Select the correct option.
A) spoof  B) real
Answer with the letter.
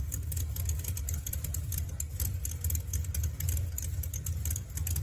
B